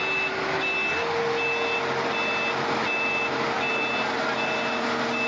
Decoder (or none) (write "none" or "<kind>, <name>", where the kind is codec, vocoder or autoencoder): none